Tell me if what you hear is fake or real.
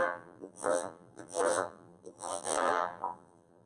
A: fake